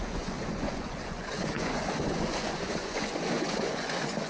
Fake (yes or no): yes